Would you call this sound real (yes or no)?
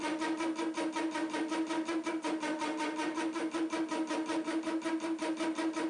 yes